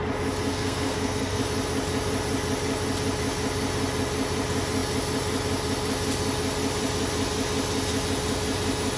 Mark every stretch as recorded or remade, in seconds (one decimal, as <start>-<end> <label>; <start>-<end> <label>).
0.0-0.5 recorded; 0.5-1.4 remade; 1.4-9.0 recorded

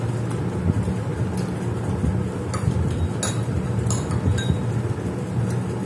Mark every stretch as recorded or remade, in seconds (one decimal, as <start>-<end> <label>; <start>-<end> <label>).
0.0-5.9 recorded